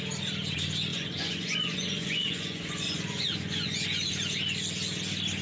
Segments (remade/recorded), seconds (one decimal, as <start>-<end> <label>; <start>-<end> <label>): 0.0-0.9 recorded; 0.9-4.1 remade; 4.1-5.4 recorded